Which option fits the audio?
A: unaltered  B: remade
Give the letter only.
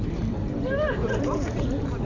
B